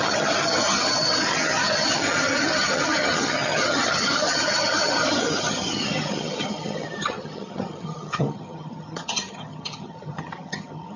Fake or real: fake